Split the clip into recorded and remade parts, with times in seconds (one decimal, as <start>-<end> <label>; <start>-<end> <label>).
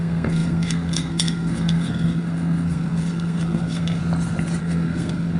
0.0-4.0 remade; 4.0-4.6 recorded; 4.6-5.4 remade